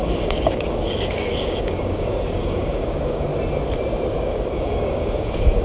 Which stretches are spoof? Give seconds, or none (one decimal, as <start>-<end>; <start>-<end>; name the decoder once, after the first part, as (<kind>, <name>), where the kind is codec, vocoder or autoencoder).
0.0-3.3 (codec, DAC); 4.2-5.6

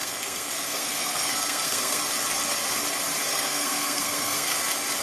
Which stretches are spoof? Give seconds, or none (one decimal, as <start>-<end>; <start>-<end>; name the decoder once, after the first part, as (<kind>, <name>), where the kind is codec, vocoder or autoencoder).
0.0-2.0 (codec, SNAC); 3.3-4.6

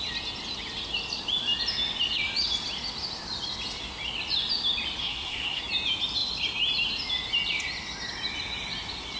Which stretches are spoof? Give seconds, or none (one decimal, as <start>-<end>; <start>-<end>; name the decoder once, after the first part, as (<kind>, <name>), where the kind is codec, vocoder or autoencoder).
5.0-5.6 (codec, SNAC)